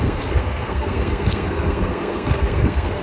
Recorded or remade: remade